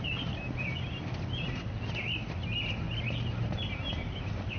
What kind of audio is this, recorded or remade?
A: recorded